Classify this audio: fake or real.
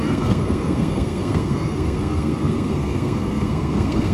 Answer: fake